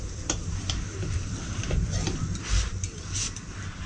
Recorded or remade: remade